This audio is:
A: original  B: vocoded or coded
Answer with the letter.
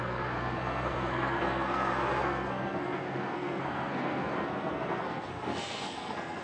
B